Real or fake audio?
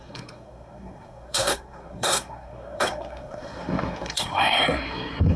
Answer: fake